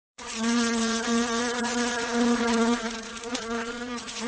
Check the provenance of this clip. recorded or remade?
remade